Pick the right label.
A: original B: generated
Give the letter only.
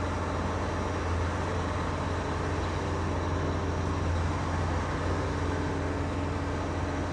A